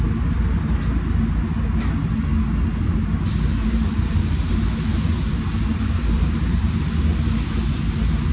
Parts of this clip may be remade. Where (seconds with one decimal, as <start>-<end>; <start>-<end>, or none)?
3.6-4.5; 4.9-6.7